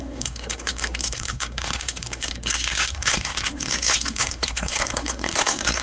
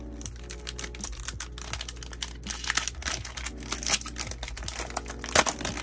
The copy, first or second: first